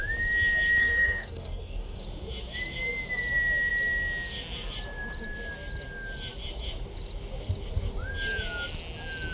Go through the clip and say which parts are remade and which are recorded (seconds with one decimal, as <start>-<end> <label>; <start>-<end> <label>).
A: 0.0-0.8 recorded; 0.8-2.0 remade; 2.0-9.3 recorded